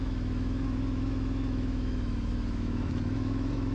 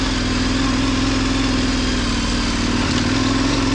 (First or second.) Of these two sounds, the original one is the second